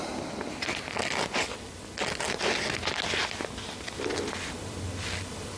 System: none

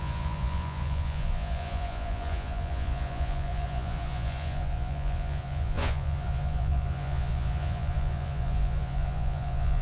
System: vocoder, Vocos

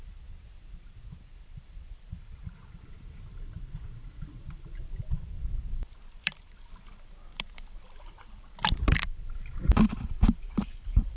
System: vocoder, BigVGAN v2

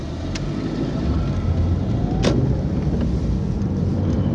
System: none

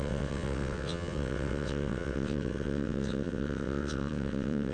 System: vocoder, WaveNeXt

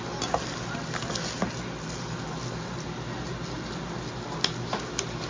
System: none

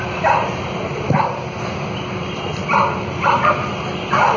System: none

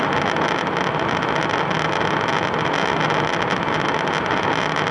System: none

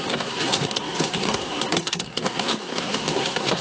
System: codec, SNAC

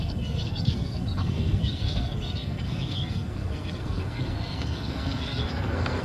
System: codec, SNAC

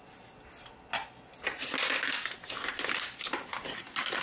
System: none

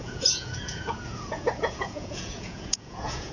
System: vocoder, Vocos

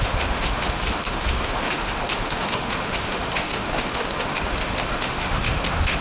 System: autoencoder, DAC-VAE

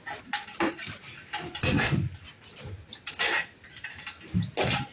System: none